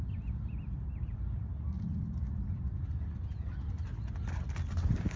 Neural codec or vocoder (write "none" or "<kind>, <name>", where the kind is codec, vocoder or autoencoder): none